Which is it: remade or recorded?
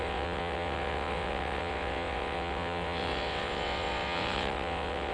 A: remade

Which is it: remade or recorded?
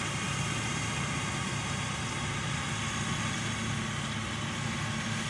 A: recorded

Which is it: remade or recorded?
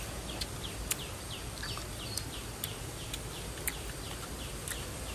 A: recorded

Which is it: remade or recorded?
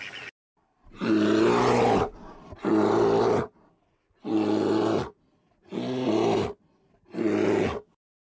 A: recorded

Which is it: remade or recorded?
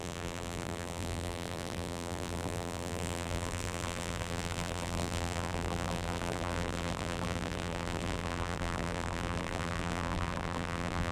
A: remade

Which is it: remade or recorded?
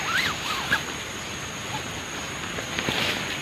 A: recorded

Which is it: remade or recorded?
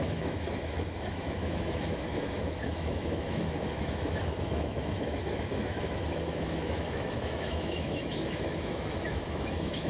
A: remade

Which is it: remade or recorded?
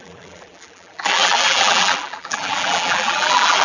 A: remade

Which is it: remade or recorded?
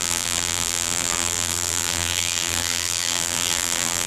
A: remade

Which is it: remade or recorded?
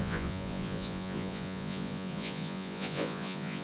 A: remade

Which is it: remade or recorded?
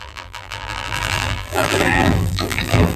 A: remade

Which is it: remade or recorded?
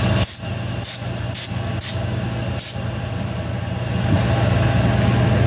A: recorded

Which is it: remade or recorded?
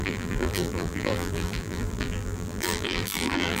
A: remade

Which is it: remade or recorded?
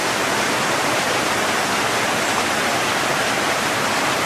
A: remade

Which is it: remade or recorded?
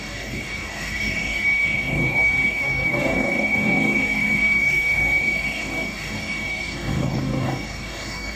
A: remade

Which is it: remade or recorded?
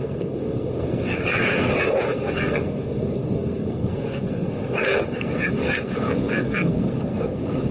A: remade